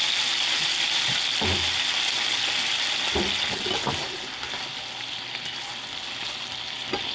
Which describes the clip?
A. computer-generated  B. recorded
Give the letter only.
B